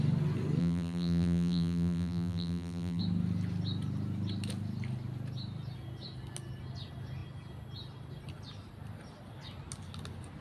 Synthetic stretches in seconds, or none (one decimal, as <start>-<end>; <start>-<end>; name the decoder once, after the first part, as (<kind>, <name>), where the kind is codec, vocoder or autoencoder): 0.6-3.0 (vocoder, BigVGAN v2)